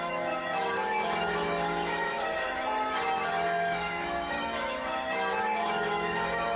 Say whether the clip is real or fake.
fake